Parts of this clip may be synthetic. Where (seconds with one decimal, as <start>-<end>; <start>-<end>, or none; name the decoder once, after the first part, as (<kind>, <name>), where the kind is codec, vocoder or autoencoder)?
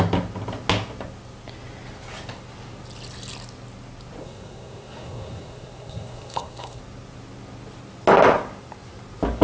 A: 4.2-6.8 (codec, SNAC)